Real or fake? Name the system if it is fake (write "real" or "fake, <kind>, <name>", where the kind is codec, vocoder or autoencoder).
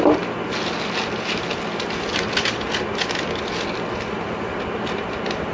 real